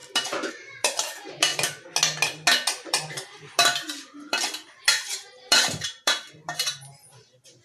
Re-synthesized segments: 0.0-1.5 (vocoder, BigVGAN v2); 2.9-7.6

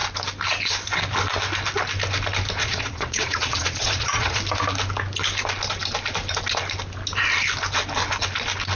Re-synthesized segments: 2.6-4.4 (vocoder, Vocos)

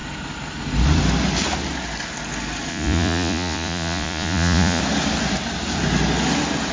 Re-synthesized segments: 2.7-4.8 (vocoder, Vocos)

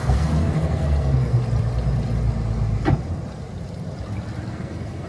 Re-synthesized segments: 0.0-1.4 (codec, SNAC); 4.5-5.1